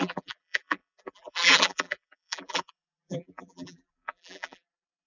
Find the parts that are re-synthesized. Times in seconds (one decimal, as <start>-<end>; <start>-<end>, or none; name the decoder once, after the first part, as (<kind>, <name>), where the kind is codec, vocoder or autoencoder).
0.0-5.1 (vocoder, BigVGAN v2)